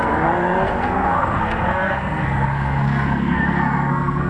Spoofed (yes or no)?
yes